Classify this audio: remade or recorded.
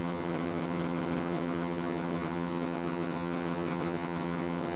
remade